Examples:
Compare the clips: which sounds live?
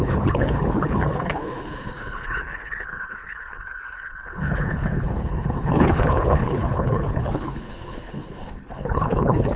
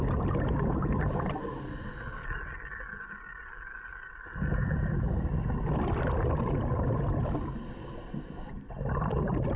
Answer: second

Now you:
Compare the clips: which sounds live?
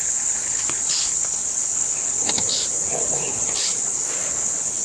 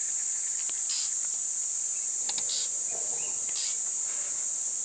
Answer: second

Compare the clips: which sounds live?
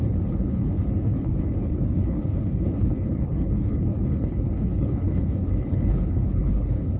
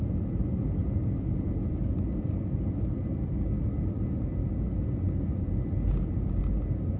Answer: second